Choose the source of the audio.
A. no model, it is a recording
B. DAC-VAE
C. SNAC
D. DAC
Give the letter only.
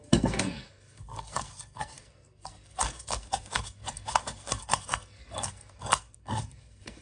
C